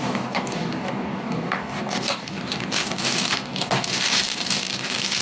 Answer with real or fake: fake